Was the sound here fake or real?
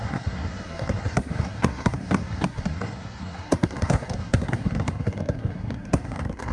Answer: fake